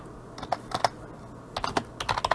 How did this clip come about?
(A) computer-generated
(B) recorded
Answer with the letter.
B